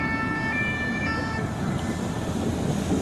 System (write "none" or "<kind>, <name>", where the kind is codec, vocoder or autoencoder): none